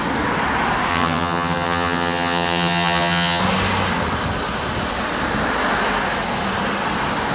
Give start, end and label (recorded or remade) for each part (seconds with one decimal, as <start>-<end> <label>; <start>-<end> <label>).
0.0-0.9 recorded; 0.9-3.4 remade; 3.4-7.3 recorded